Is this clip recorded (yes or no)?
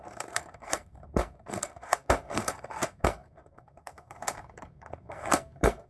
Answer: no